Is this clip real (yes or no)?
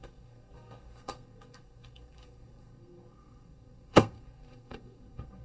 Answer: no